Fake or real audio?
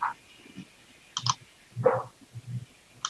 real